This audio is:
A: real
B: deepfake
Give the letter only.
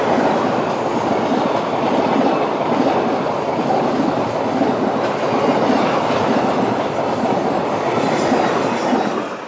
A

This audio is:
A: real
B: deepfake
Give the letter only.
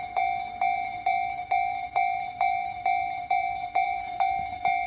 B